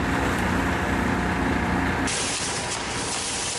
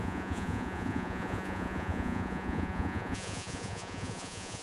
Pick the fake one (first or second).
second